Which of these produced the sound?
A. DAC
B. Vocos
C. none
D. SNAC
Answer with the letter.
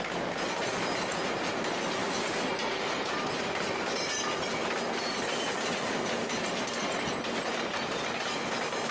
C